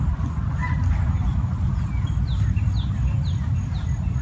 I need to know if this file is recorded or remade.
recorded